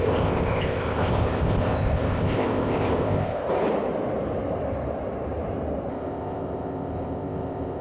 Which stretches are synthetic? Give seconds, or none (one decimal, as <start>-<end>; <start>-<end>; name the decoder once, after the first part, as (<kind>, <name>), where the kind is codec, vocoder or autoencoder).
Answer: 0.0-3.4 (codec, ZipCodec); 5.9-7.8